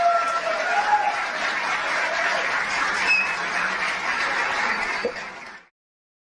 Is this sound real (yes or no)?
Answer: no